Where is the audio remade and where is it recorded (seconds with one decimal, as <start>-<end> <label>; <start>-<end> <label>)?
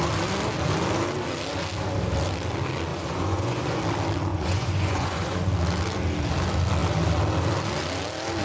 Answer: 0.0-2.9 recorded; 2.9-3.8 remade; 3.8-4.3 recorded; 4.3-5.5 remade; 5.5-8.4 recorded